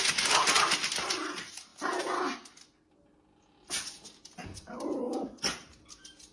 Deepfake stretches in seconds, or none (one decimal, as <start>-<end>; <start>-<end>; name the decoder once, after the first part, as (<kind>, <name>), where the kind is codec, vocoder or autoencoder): none